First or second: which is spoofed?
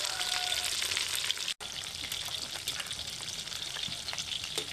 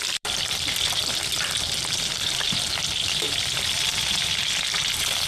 second